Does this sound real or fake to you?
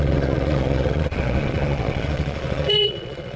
fake